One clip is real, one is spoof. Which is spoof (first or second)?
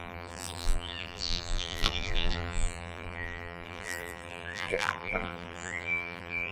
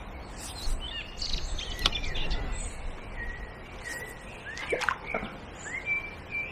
first